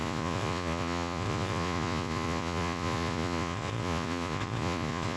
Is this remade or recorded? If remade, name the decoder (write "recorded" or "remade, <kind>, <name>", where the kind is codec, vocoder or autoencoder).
remade, vocoder, Vocos